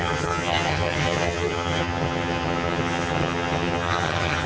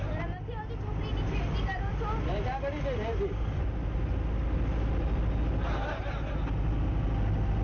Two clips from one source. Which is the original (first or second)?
second